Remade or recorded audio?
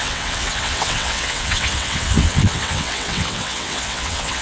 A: remade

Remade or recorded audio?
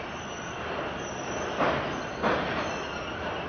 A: recorded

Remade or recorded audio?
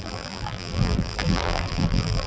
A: remade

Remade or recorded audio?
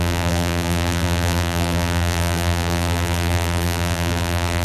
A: remade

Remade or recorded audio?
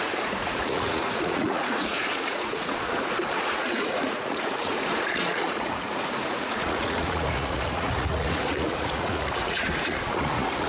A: remade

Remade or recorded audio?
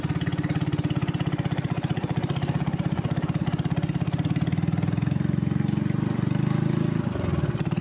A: recorded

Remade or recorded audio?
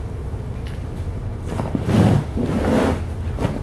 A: recorded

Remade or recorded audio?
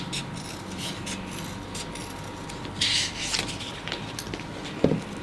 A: recorded